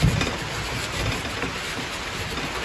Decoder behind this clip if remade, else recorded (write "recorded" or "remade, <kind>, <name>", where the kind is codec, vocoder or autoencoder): recorded